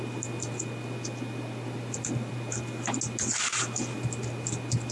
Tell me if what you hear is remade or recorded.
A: recorded